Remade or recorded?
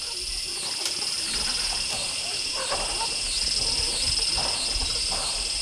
recorded